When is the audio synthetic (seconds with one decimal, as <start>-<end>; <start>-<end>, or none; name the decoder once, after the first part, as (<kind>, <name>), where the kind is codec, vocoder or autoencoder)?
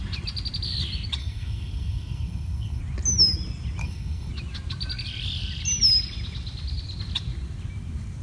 1.2-2.8 (codec, SNAC); 3.8-4.3